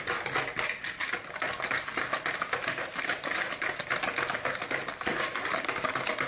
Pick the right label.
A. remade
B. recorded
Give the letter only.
B